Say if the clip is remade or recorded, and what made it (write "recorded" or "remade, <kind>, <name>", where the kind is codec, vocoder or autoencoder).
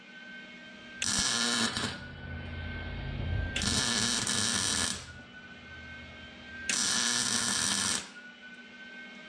recorded